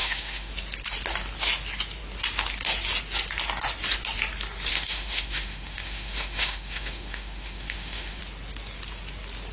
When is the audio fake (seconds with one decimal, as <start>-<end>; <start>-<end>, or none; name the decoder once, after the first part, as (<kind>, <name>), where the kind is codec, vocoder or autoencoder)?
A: 0.0-0.5 (autoencoder, DAC-VAE); 4.7-8.2